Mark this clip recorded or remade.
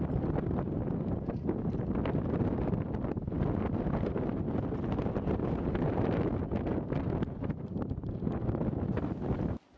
recorded